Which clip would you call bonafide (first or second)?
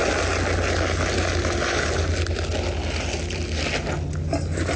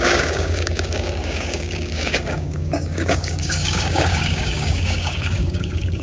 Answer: first